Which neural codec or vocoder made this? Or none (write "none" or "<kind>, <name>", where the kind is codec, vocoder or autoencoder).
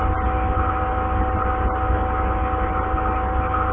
none